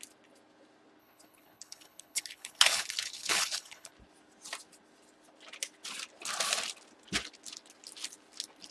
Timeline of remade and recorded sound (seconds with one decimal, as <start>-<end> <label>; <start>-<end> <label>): 0.0-1.0 recorded; 1.0-3.9 remade; 3.9-8.7 recorded